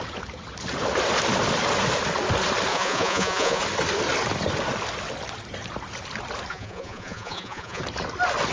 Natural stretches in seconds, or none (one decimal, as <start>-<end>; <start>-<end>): 0.0-2.7; 3.6-6.5; 7.8-8.5